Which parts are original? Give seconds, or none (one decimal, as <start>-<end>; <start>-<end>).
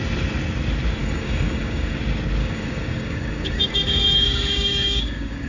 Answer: 0.0-1.0; 2.0-2.4